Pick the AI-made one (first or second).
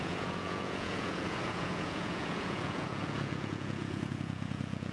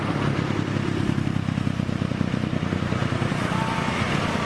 first